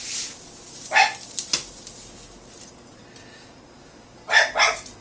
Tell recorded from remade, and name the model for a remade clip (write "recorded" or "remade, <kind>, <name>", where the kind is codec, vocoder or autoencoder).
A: recorded